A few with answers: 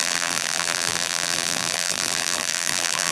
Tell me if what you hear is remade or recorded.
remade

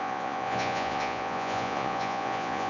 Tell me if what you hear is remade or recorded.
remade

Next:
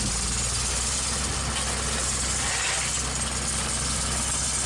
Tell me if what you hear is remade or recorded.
recorded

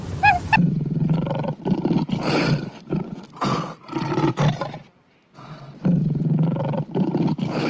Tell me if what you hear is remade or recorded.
recorded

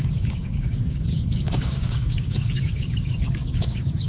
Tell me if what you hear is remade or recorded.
remade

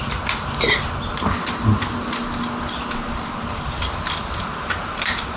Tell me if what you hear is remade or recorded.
recorded